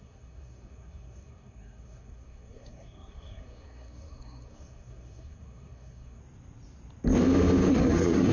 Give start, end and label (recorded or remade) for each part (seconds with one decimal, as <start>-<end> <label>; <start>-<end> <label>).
0.0-6.2 remade; 6.2-7.7 recorded; 7.7-8.3 remade